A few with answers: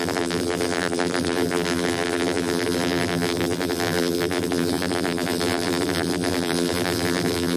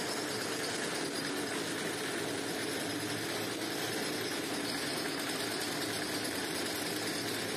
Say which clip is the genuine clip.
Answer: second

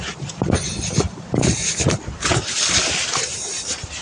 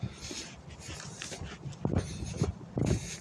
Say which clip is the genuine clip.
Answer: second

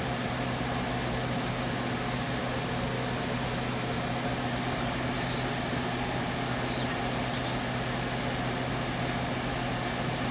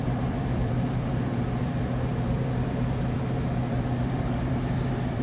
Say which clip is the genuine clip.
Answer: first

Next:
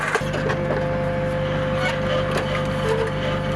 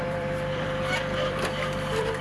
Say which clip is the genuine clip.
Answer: first